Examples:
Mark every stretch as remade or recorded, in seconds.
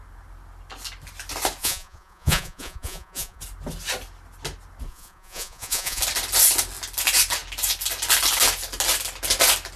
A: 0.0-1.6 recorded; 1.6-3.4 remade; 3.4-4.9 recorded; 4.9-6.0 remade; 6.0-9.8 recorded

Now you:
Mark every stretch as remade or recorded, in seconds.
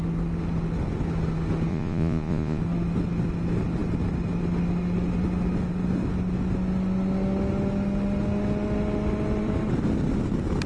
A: 0.0-1.7 recorded; 1.7-2.6 remade; 2.6-10.7 recorded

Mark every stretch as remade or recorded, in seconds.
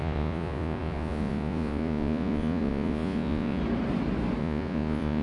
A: 0.0-3.6 remade; 3.6-4.4 recorded; 4.4-5.2 remade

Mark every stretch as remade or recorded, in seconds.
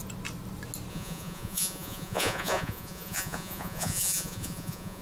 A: 0.0-0.9 recorded; 0.9-5.0 remade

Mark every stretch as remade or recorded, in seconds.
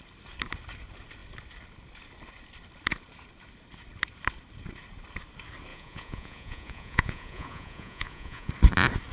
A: 0.0-5.7 recorded; 5.7-8.5 remade; 8.5-9.1 recorded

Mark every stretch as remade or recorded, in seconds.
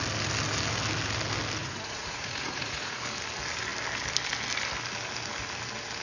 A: 0.0-1.6 recorded; 1.6-3.0 remade; 3.0-6.0 recorded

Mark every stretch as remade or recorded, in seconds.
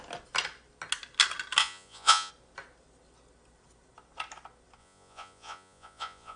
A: 0.0-1.6 recorded; 1.6-2.3 remade; 2.3-4.8 recorded; 4.8-6.4 remade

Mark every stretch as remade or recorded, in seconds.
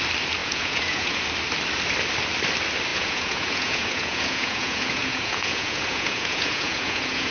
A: 0.0-0.4 recorded; 0.4-1.2 remade; 1.2-2.9 recorded; 2.9-7.3 remade